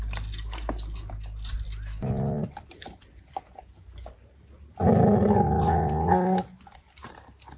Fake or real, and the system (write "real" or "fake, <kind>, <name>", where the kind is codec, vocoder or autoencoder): real